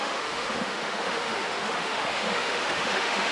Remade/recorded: remade